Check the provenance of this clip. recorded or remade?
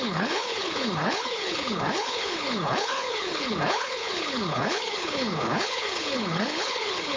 remade